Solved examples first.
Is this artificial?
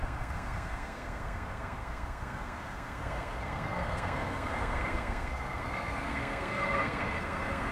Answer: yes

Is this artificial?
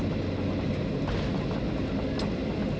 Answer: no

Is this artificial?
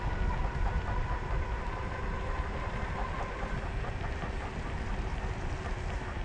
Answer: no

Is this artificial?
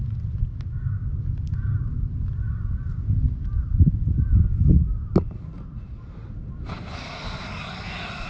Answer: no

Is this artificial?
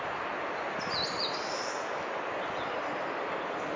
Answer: no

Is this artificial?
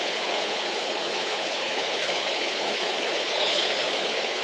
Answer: yes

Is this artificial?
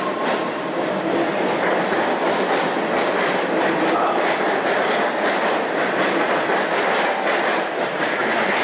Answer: no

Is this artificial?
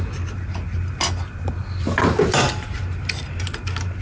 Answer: no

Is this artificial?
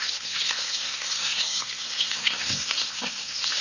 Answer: yes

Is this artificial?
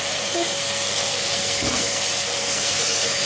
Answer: yes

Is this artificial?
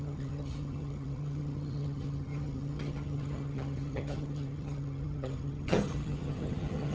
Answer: yes